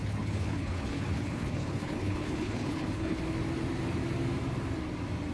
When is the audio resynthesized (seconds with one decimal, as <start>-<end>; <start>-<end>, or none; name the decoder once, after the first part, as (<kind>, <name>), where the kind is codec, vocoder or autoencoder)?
0.0-3.2 (codec, HILCodec)